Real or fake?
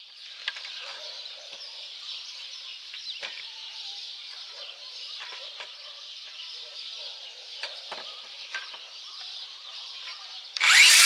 fake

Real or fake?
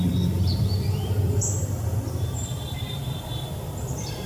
fake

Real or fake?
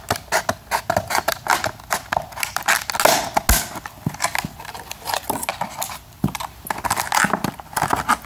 real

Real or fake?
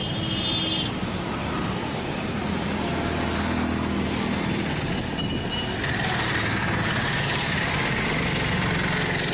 real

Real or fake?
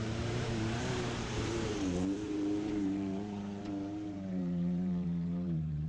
fake